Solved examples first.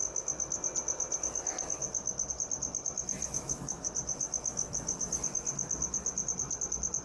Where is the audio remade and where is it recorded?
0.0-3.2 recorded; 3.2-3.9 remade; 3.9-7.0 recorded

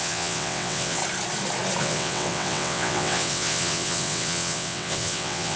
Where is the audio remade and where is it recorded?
0.0-1.0 remade; 1.0-1.8 recorded; 1.8-5.6 remade